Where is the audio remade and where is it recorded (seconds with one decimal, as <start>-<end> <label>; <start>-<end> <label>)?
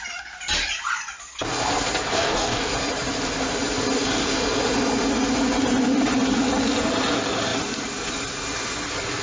0.0-2.1 recorded; 2.1-2.7 remade; 2.7-9.2 recorded